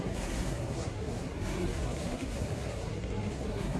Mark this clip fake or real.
fake